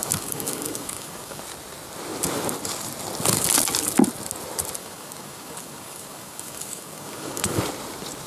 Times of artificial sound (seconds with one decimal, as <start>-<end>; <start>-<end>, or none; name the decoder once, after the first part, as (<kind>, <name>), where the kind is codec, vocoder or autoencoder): 0.0-1.4 (codec, DAC); 4.8-7.6